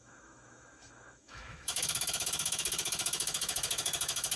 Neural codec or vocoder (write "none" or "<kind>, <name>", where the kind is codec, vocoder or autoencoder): autoencoder, DAC-VAE